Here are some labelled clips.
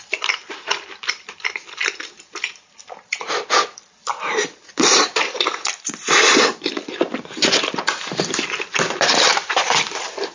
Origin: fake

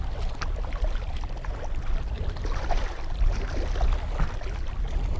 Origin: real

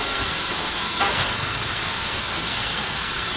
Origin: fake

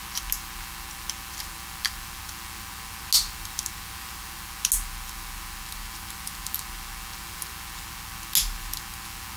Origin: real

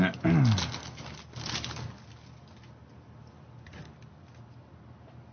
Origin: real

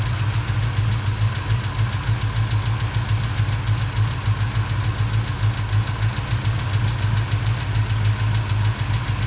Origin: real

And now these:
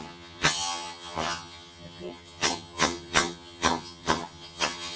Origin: fake